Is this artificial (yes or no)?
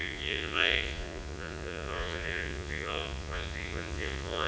yes